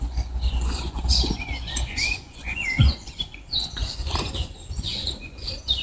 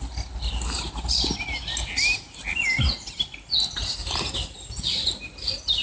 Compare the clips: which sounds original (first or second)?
second